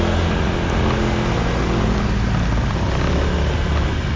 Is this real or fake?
real